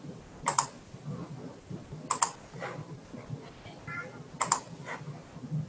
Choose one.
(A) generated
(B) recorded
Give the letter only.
B